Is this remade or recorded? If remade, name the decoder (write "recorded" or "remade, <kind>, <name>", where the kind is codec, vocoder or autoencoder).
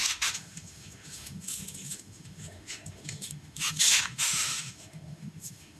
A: remade, autoencoder, DAC-VAE